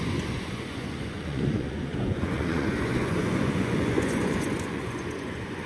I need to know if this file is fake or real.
fake